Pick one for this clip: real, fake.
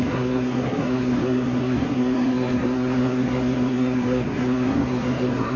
fake